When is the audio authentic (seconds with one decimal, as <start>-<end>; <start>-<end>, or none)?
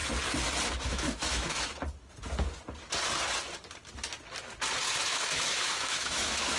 0.0-0.8; 1.7-5.0